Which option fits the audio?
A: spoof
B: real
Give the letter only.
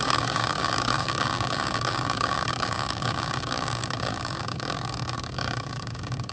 A